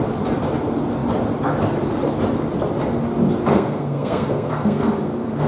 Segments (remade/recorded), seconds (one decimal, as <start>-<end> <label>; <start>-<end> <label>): 0.0-3.5 recorded; 3.5-5.5 remade